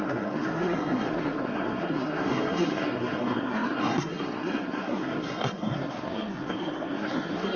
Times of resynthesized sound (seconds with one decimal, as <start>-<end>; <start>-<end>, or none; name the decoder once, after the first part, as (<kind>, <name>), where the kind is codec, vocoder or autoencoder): 0.0-7.6 (codec, SNAC)